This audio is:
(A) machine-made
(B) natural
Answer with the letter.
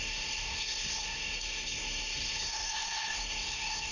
A